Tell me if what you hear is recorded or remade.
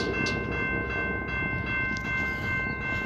recorded